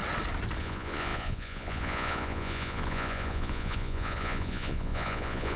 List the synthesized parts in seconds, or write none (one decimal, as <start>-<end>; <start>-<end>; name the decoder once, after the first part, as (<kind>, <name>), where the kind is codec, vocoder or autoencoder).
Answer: 0.6-5.6 (vocoder, Vocos)